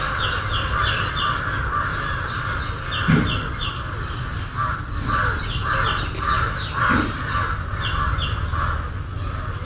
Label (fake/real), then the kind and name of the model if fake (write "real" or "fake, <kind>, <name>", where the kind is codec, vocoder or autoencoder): real